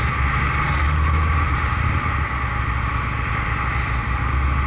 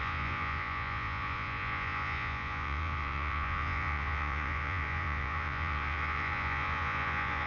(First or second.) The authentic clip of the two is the first